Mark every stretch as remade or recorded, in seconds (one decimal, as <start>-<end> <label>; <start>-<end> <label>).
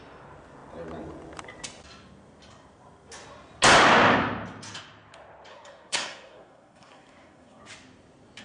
0.0-5.5 recorded; 5.5-7.6 remade; 7.6-8.4 recorded